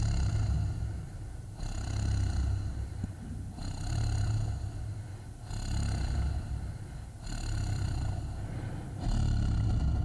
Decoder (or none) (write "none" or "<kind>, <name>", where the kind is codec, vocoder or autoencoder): none